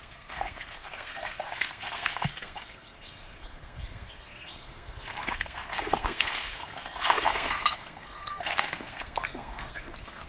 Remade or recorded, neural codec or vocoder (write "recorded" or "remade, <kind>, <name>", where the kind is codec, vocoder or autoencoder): remade, codec, SNAC